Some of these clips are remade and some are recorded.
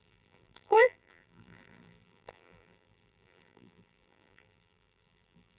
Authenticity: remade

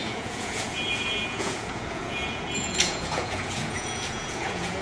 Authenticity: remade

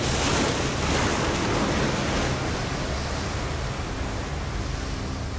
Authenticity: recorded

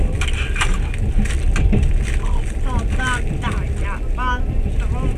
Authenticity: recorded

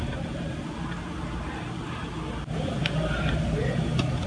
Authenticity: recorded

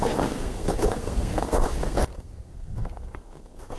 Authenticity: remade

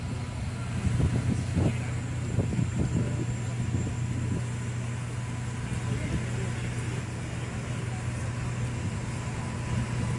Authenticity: recorded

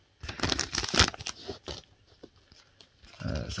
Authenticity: recorded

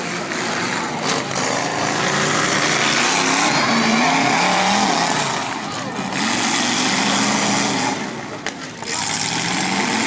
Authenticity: recorded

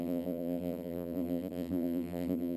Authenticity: remade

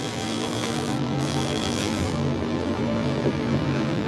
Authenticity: remade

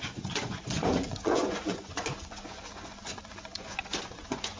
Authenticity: remade